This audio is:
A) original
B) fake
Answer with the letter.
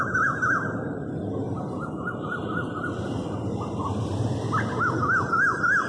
B